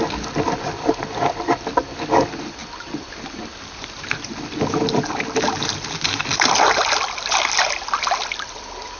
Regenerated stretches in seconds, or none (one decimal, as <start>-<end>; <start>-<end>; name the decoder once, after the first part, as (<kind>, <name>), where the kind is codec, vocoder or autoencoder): none